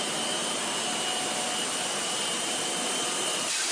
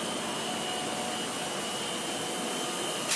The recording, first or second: second